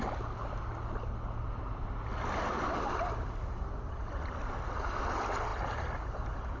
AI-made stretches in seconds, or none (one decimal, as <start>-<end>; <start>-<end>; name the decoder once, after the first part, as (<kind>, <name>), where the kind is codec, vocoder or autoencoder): none